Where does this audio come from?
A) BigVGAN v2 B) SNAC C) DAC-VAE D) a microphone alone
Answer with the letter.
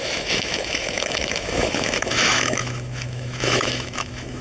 C